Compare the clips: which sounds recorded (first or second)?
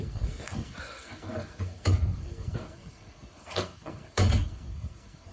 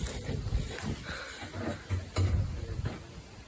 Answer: second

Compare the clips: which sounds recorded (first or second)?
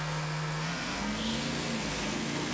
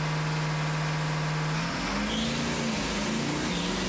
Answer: second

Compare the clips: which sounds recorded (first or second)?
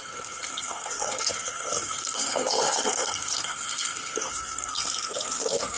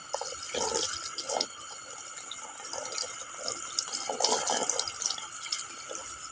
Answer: second